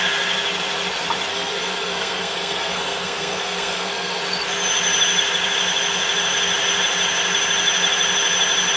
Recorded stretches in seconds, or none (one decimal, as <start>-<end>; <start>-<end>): 0.0-1.3; 4.2-8.8